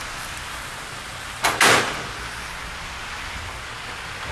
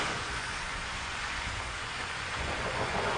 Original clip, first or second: first